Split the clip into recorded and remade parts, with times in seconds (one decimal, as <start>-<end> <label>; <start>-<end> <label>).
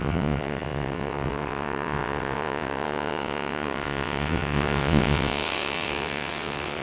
0.0-6.8 remade